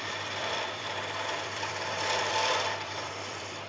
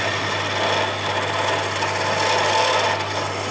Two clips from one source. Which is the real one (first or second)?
second